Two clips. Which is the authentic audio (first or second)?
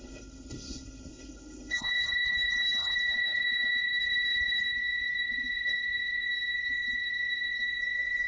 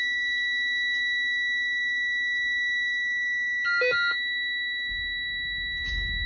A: second